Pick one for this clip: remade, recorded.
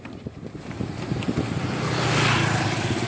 recorded